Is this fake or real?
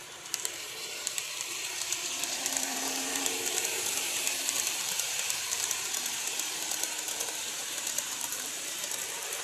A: fake